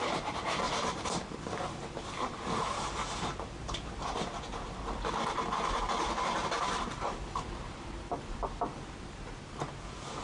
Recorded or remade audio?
remade